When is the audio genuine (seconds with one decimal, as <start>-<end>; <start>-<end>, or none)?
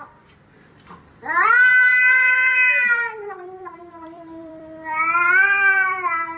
none